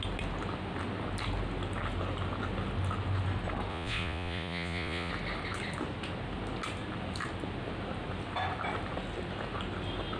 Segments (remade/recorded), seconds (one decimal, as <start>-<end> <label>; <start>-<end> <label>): 0.0-3.7 recorded; 3.7-5.1 remade; 5.1-10.2 recorded